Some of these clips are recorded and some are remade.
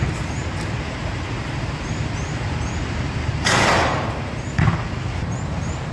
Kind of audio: remade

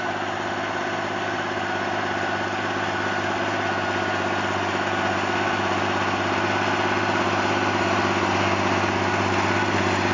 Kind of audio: recorded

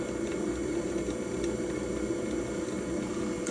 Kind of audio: recorded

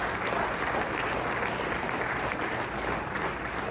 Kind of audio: recorded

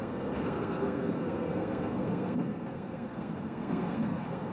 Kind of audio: remade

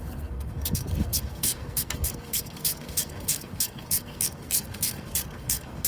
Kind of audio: remade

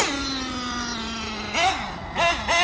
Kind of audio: recorded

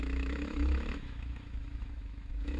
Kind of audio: remade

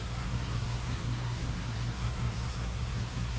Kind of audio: remade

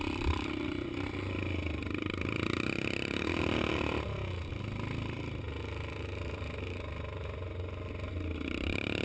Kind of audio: recorded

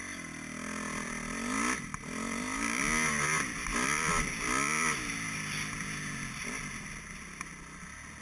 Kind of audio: recorded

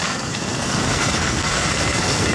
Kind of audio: remade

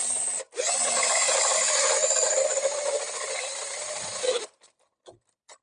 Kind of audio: recorded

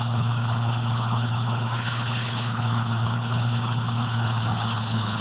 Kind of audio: remade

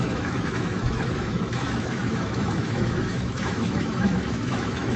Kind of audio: remade